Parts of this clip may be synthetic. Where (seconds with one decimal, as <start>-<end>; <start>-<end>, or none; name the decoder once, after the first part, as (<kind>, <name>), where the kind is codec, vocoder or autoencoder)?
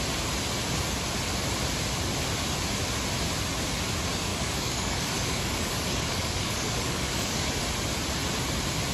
4.3-7.6 (codec, DAC)